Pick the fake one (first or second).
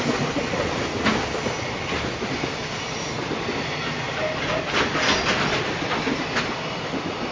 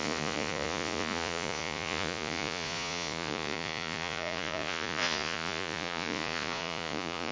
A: second